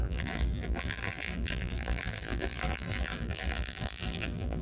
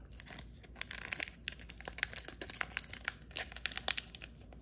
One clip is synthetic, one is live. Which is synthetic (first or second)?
first